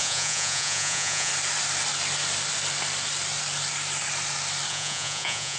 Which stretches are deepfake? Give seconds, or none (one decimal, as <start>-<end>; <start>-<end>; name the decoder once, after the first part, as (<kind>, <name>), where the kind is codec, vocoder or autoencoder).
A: 0.0-1.3 (vocoder, Vocos); 4.7-5.6